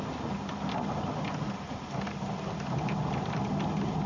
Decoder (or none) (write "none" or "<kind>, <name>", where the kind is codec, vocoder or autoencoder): none